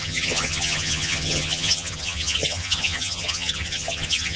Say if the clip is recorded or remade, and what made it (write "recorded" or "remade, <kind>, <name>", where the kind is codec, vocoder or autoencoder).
remade, vocoder, HiFi-GAN